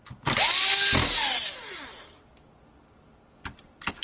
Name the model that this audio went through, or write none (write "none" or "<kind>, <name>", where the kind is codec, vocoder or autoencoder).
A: none